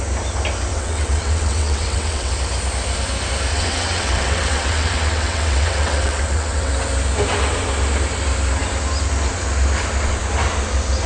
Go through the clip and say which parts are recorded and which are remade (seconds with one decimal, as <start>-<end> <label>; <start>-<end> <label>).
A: 0.0-0.7 recorded; 0.7-2.3 remade; 2.3-3.5 recorded; 3.5-6.7 remade; 6.7-11.1 recorded